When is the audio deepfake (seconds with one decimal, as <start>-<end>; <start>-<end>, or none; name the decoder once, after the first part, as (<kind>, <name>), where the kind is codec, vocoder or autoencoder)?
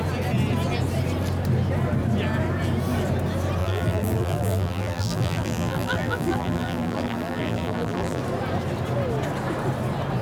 3.6-8.2 (vocoder, BigVGAN v2)